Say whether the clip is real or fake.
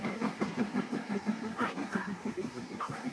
fake